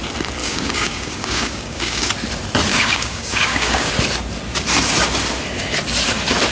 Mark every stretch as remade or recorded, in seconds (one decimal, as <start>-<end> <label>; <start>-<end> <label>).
0.0-0.4 recorded; 0.4-2.1 remade; 2.1-2.7 recorded; 2.7-3.9 remade; 3.9-6.5 recorded